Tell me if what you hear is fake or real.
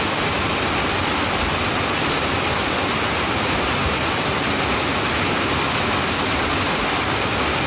real